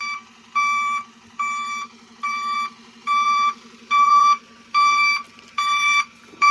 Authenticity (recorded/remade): remade